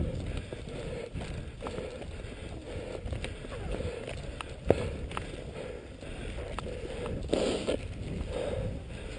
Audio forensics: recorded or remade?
recorded